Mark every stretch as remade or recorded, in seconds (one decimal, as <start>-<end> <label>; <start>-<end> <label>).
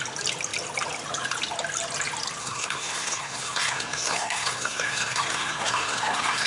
0.0-2.4 recorded; 2.4-6.5 remade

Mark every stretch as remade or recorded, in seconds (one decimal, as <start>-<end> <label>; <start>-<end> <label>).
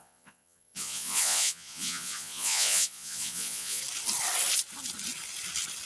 0.0-3.8 remade; 3.8-5.9 recorded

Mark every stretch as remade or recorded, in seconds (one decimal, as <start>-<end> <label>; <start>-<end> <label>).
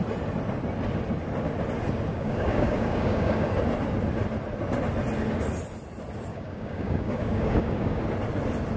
0.0-2.1 recorded; 2.1-3.5 remade; 3.5-6.3 recorded; 6.3-8.0 remade; 8.0-8.8 recorded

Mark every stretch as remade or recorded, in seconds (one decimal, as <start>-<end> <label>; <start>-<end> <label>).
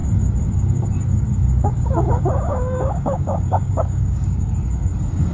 0.0-2.5 recorded; 2.5-4.5 remade; 4.5-5.3 recorded